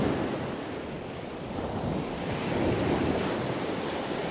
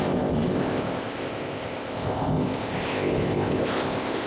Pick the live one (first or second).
first